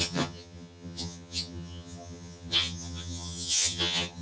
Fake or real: fake